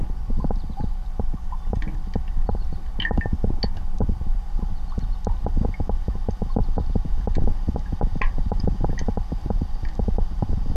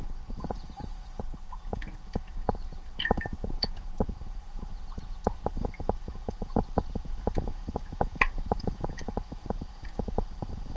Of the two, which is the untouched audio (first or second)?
first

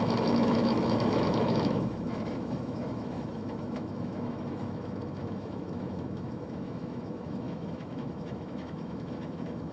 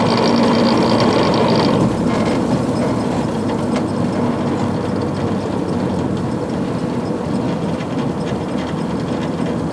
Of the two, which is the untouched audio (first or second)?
second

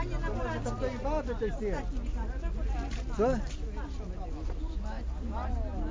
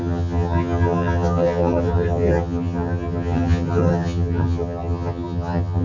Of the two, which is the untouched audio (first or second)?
first